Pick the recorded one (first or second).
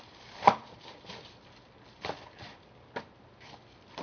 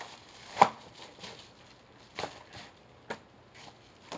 second